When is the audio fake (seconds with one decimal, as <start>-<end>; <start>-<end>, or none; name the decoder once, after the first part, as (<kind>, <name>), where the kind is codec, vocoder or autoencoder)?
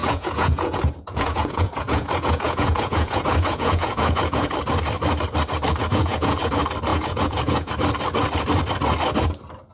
0.0-4.5 (vocoder, Vocos); 5.9-6.5; 6.9-7.7